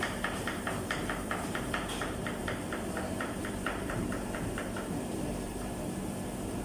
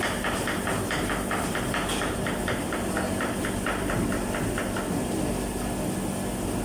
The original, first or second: second